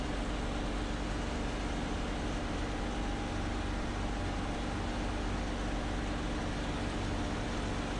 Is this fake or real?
real